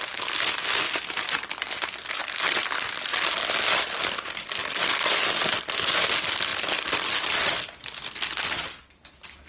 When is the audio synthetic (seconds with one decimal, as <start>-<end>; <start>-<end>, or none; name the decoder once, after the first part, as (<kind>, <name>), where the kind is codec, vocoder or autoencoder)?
none